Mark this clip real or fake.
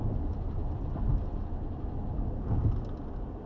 real